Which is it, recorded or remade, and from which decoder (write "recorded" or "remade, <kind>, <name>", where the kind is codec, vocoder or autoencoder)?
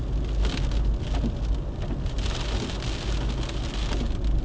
recorded